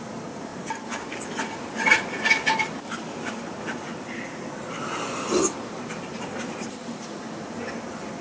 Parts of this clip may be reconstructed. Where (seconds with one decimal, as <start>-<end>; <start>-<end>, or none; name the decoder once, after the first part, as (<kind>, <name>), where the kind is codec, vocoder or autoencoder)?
none